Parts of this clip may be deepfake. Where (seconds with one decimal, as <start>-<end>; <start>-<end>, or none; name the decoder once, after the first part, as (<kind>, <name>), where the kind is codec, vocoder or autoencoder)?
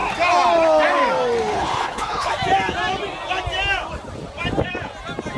1.5-2.3 (codec, HILCodec)